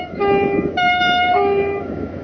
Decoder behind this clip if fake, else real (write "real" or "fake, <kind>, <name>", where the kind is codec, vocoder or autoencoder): fake, autoencoder, DAC-VAE